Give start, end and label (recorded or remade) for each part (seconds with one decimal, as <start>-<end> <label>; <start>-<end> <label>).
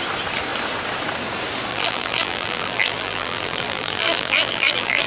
0.0-1.7 recorded; 1.7-5.1 remade